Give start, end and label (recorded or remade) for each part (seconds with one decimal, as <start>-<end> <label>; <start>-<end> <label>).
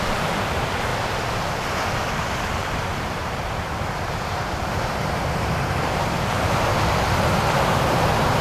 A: 0.0-0.9 remade; 0.9-2.1 recorded; 2.1-6.7 remade; 6.7-7.4 recorded; 7.4-8.4 remade